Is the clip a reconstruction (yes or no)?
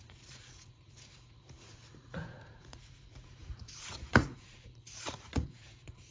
yes